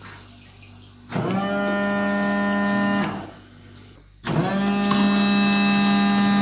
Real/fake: real